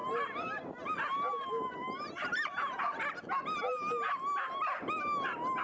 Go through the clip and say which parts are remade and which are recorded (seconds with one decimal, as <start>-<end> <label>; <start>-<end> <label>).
0.0-3.4 remade; 3.4-5.6 recorded